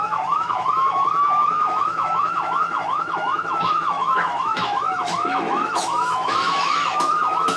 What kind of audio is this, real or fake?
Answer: fake